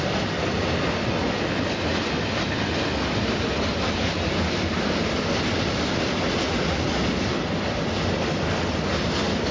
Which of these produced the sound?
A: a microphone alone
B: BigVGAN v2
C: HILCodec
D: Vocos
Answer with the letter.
A